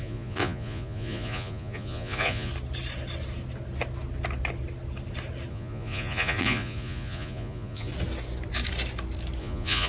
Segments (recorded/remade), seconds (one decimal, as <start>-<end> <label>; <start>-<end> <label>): 0.0-2.5 remade; 2.5-5.5 recorded; 5.5-7.9 remade; 7.9-9.4 recorded; 9.4-9.9 remade